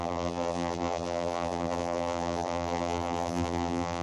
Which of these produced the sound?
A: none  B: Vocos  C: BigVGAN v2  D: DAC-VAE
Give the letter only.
C